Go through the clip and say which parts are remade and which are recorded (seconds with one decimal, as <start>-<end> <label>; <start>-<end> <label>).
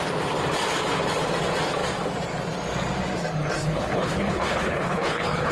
0.0-3.6 recorded; 3.6-5.5 remade